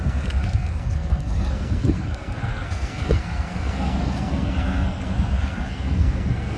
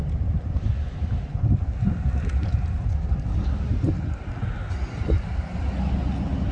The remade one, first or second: first